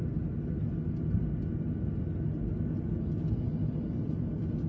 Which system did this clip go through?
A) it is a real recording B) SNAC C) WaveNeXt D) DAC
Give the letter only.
A